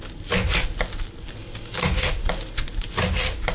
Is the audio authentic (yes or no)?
yes